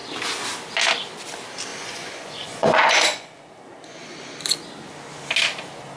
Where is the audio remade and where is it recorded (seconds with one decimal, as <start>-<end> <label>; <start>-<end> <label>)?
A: 0.0-1.7 recorded; 1.7-3.5 remade; 3.5-6.0 recorded